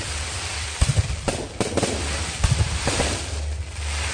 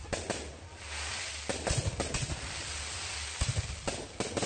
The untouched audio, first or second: second